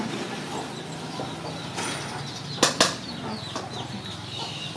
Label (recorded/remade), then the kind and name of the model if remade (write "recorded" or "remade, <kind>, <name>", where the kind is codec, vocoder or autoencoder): recorded